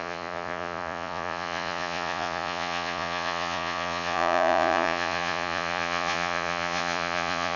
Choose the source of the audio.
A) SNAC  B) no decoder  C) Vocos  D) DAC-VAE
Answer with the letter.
C